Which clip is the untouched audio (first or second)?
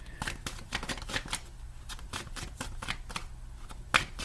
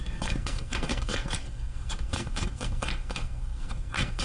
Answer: first